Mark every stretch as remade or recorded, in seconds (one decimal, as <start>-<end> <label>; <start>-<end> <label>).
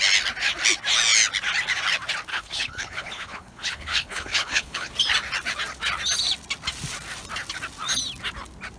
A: 0.0-2.3 recorded; 2.3-4.9 remade; 4.9-8.8 recorded